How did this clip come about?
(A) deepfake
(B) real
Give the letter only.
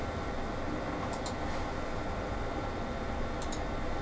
B